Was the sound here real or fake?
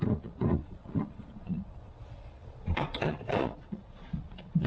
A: fake